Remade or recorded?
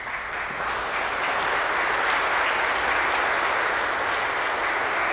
recorded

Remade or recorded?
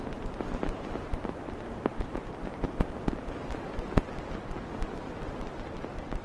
recorded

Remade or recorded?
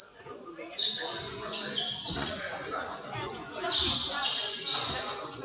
remade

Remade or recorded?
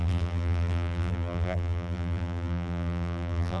remade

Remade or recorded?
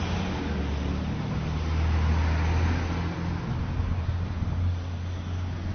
recorded